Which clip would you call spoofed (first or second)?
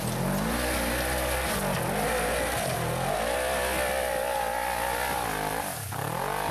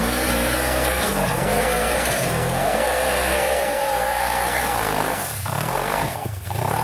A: second